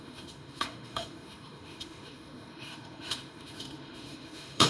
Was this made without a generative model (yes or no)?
no